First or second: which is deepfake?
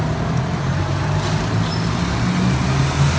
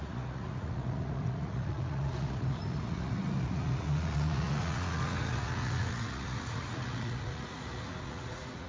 second